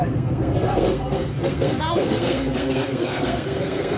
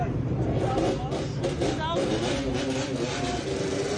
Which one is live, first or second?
second